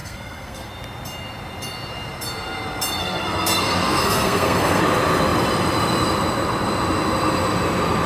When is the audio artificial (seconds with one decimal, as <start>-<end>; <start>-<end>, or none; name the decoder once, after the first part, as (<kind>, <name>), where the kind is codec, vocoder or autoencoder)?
0.0-0.7 (codec, SNAC); 3.0-4.8